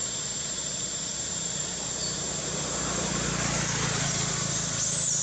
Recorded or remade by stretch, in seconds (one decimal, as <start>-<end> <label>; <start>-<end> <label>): 0.0-3.1 remade; 3.1-5.2 recorded